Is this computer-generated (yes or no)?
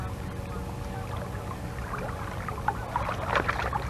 no